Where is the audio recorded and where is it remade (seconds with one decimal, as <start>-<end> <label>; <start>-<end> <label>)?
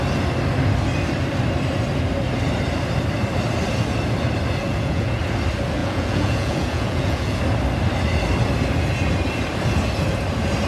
0.0-4.6 recorded; 4.6-5.2 remade; 5.2-5.8 recorded; 5.8-7.4 remade; 7.4-10.7 recorded